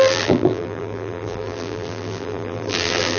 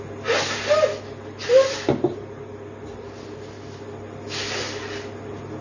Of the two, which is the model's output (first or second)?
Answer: first